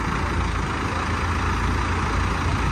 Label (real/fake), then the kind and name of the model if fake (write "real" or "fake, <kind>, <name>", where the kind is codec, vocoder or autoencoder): real